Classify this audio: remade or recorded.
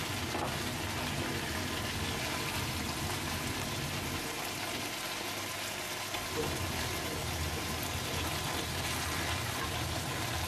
recorded